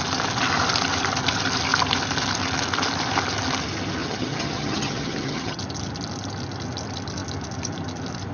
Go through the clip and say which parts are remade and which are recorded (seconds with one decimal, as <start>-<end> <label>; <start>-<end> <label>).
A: 0.0-4.0 recorded; 4.0-5.6 remade; 5.6-8.3 recorded